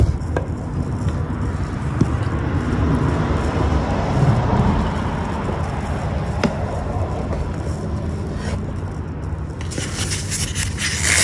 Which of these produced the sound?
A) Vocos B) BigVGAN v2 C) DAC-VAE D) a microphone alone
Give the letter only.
D